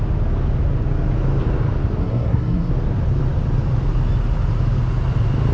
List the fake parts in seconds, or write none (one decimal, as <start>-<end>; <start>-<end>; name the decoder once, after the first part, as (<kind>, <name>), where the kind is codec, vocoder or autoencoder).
2.0-2.7 (codec, SNAC)